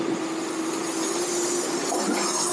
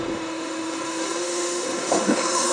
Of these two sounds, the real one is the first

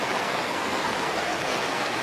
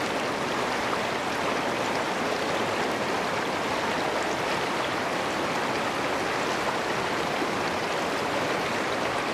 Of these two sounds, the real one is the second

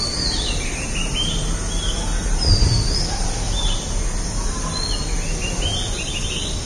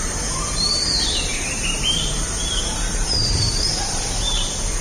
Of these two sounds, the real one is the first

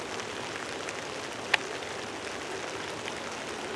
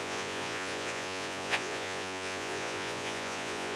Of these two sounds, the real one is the first